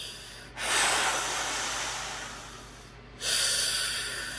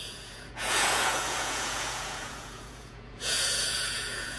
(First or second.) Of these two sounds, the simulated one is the second